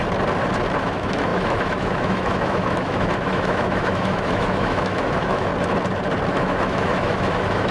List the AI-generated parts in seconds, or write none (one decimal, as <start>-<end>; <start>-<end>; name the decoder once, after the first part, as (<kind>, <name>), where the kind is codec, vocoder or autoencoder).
0.8-5.5 (autoencoder, DAC-VAE); 6.3-7.7